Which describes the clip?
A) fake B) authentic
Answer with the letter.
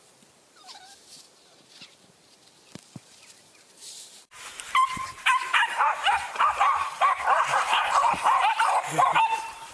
A